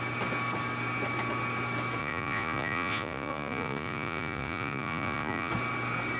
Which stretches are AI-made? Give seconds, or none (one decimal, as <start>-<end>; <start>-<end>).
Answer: 2.0-5.5